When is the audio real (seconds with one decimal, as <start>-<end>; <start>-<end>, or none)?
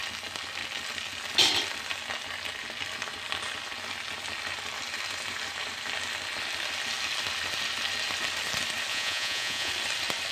0.0-8.9; 9.7-10.3